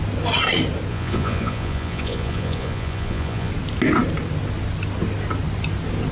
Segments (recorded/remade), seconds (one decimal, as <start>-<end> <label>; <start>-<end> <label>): 0.0-0.9 recorded; 0.9-3.5 remade; 3.5-6.1 recorded